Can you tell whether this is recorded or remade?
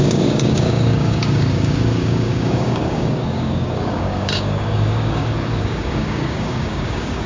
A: remade